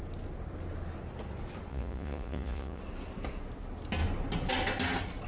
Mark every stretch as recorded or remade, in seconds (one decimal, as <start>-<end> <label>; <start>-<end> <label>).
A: 0.0-1.7 recorded; 1.7-2.8 remade; 2.8-5.3 recorded